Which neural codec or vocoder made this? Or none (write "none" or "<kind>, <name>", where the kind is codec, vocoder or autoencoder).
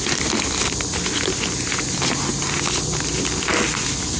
none